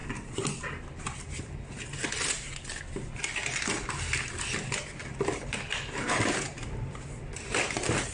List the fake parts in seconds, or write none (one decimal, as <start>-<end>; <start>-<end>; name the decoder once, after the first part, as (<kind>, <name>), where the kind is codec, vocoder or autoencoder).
none